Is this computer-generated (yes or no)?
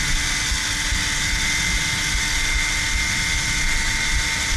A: no